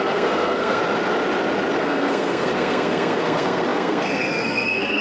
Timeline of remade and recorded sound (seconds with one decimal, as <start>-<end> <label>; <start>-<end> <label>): 0.0-0.8 remade; 0.8-1.8 recorded; 1.8-5.0 remade